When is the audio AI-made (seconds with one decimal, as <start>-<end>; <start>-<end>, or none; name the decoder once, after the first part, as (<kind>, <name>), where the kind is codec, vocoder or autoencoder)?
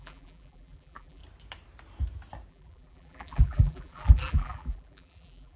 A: 0.0-1.2 (vocoder, BigVGAN v2); 2.5-5.6